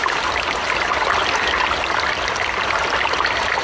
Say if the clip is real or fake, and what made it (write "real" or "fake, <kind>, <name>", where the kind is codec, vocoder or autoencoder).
real